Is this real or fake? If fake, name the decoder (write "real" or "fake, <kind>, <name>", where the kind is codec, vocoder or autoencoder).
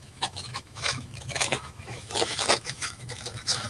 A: fake, autoencoder, DAC-VAE